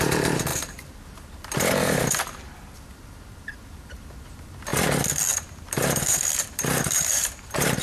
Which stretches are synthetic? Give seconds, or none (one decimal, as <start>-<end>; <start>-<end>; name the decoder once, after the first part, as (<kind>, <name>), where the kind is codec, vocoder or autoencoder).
0.0-4.7 (vocoder, BigVGAN v2); 5.3-7.8